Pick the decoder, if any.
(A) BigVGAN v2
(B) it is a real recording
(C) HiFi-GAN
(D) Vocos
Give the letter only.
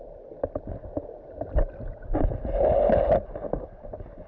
B